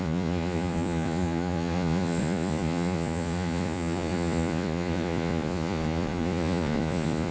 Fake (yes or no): yes